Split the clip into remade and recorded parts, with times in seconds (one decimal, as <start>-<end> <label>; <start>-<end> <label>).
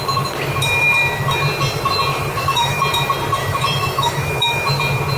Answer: 0.0-2.1 recorded; 2.1-2.8 remade; 2.8-3.4 recorded; 3.4-4.8 remade; 4.8-5.2 recorded